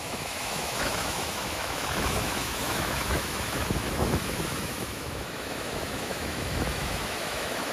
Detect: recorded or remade remade